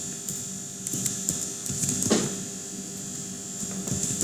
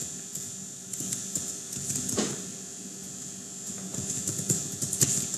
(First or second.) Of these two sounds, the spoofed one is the second